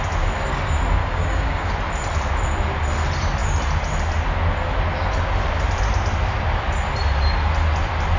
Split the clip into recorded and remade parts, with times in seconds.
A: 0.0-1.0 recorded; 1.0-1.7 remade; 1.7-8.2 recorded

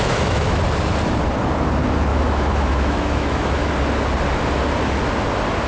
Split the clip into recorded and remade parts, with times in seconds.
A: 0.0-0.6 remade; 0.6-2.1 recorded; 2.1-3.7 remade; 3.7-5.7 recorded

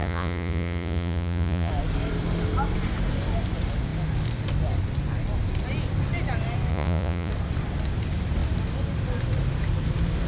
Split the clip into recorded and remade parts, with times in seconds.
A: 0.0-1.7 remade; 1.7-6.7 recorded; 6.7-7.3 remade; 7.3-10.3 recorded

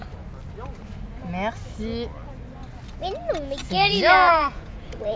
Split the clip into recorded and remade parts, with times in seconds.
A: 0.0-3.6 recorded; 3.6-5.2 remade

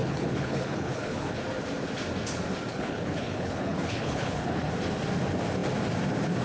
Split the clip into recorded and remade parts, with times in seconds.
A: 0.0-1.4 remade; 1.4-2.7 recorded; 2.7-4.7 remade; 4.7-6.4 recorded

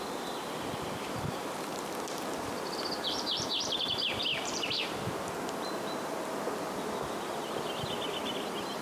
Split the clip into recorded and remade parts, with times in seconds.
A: 0.0-4.3 recorded; 4.3-5.0 remade; 5.0-8.8 recorded